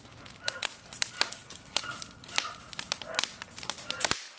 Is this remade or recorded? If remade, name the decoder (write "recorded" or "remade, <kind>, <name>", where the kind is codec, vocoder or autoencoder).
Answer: recorded